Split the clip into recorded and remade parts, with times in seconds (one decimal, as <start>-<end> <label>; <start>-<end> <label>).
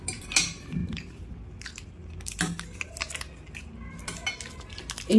0.0-0.8 recorded; 0.8-1.3 remade; 1.3-5.2 recorded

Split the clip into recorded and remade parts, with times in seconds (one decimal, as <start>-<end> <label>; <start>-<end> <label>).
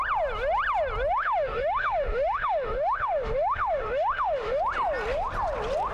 0.0-1.1 recorded; 1.1-4.6 remade; 4.6-5.9 recorded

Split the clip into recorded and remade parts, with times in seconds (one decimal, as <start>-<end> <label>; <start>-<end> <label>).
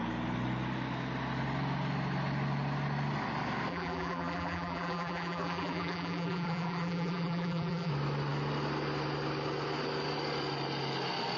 0.0-3.7 recorded; 3.7-7.9 remade; 7.9-11.4 recorded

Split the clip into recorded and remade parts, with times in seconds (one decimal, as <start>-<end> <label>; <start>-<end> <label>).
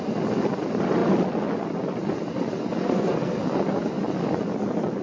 0.0-2.8 recorded; 2.8-3.4 remade; 3.4-5.0 recorded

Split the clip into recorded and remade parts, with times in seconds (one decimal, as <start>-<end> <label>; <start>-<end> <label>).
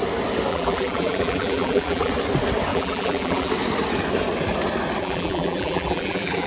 0.0-0.5 recorded; 0.5-2.1 remade; 2.1-2.7 recorded; 2.7-3.5 remade; 3.5-5.0 recorded; 5.0-6.5 remade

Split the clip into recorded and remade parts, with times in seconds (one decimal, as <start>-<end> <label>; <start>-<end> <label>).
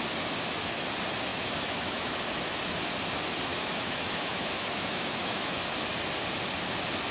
0.0-1.3 recorded; 1.3-2.2 remade; 2.2-3.5 recorded; 3.5-5.6 remade; 5.6-7.1 recorded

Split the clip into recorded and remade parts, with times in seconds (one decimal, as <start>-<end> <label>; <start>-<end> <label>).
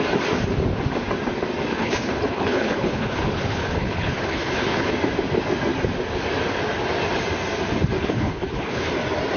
0.0-1.7 recorded; 1.7-4.9 remade; 4.9-8.0 recorded; 8.0-8.9 remade; 8.9-9.4 recorded